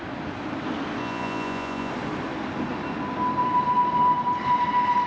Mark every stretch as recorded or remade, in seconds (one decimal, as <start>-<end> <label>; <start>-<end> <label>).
0.0-1.0 recorded; 1.0-1.9 remade; 1.9-5.1 recorded